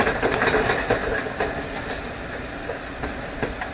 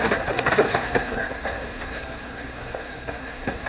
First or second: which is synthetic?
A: second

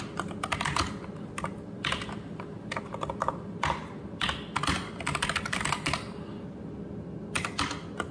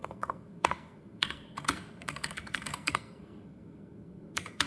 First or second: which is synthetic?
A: second